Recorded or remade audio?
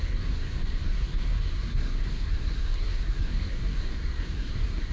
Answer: remade